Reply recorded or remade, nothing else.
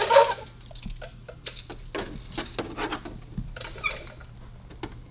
recorded